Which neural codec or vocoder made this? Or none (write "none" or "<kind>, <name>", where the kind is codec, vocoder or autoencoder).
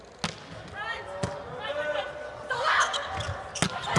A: none